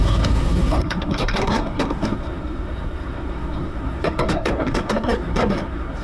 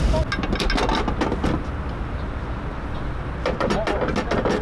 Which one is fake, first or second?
first